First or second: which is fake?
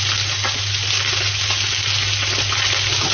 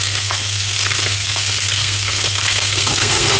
second